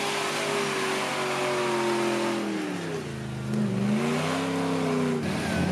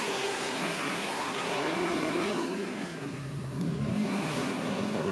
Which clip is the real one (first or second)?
first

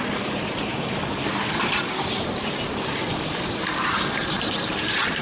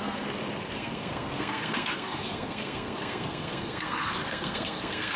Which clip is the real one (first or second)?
first